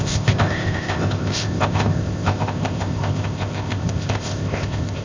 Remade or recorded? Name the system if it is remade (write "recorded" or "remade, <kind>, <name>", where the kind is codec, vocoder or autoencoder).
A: remade, codec, ZipCodec